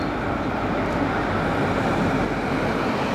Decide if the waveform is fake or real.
real